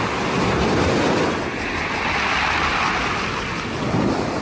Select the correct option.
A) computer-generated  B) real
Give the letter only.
B